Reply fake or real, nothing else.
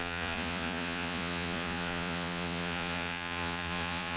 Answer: fake